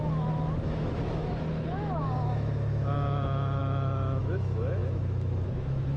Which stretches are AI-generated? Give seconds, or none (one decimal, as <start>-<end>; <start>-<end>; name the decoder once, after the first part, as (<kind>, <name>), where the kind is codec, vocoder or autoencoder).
0.0-6.0 (autoencoder, DAC-VAE)